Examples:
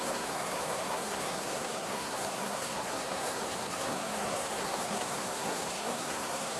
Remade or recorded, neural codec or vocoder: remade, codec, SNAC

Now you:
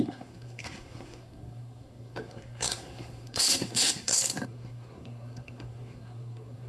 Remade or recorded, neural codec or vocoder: remade, codec, SNAC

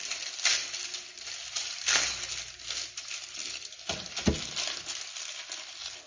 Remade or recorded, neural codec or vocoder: recorded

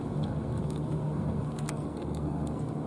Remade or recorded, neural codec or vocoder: remade, codec, SNAC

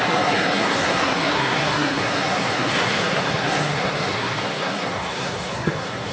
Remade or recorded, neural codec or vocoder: remade, codec, SNAC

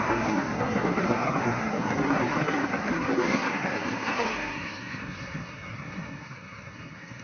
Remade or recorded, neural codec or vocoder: remade, codec, SNAC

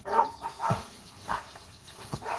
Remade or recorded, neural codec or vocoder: remade, codec, SNAC